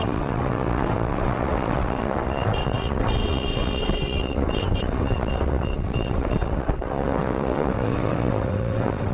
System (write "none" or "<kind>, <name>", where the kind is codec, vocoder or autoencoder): vocoder, WaveNeXt